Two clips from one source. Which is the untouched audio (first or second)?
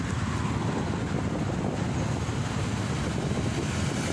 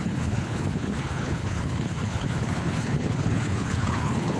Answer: first